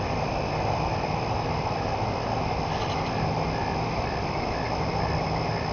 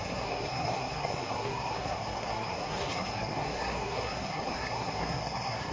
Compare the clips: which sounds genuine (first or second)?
first